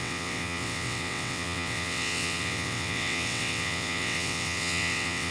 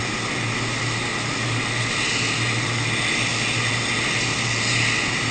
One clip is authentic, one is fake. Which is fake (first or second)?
first